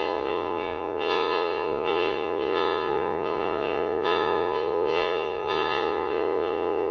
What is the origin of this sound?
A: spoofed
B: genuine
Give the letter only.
A